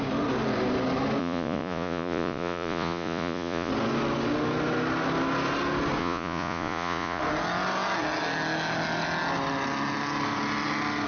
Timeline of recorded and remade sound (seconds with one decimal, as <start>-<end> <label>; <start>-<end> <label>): 0.0-1.2 recorded; 1.2-3.7 remade; 3.7-6.0 recorded; 6.0-7.2 remade; 7.2-11.1 recorded